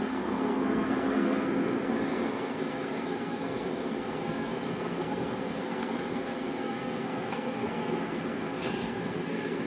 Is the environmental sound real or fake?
fake